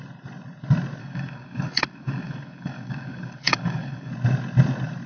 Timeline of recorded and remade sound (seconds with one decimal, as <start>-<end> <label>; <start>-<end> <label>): 0.0-1.0 recorded; 1.0-4.1 remade; 4.1-5.1 recorded